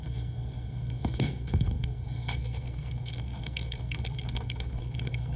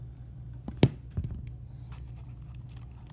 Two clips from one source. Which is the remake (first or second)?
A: first